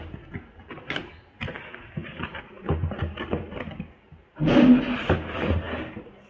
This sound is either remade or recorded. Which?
recorded